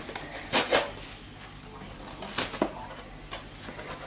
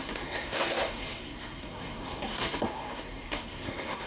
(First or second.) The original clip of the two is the first